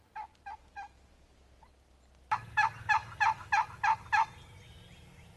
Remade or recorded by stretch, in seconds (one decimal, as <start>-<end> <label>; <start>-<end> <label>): 0.0-5.4 recorded